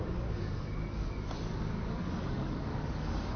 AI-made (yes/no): yes